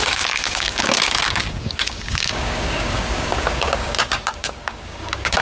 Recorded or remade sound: remade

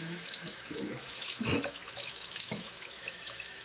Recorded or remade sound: remade